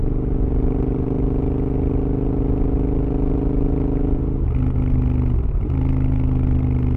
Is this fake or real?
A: real